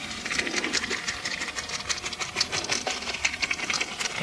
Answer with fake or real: fake